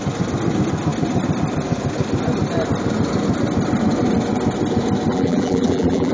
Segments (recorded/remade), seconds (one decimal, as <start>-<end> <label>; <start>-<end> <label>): 0.0-5.1 recorded; 5.1-6.1 remade